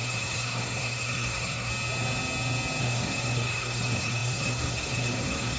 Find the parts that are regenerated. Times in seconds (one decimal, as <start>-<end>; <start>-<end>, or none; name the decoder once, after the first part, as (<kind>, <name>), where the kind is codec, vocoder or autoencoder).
0.0-1.7 (codec, SNAC); 2.8-5.6